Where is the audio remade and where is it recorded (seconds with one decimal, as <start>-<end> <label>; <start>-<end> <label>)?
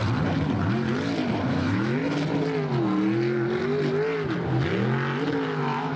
0.0-1.5 recorded; 1.5-2.0 remade; 2.0-5.6 recorded; 5.6-6.0 remade